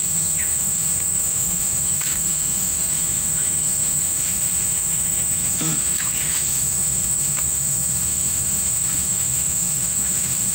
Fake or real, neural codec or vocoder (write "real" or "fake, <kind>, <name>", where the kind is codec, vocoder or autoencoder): fake, autoencoder, DAC-VAE